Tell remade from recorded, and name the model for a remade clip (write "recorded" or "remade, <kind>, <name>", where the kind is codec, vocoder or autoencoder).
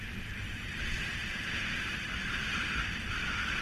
remade, vocoder, BigVGAN v2